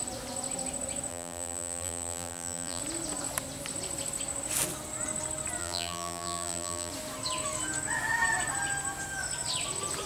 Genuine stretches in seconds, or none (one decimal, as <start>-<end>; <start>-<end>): 0.0-1.1; 2.8-5.6; 6.9-10.1